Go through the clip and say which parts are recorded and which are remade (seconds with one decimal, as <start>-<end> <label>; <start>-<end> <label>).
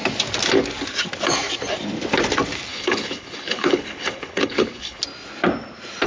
0.0-2.7 recorded; 2.7-5.0 remade; 5.0-6.1 recorded